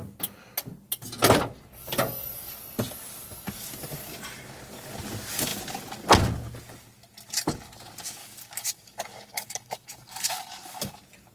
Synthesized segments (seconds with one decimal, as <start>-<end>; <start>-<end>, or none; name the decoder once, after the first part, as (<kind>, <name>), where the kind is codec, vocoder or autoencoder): 8.2-10.9 (codec, DAC)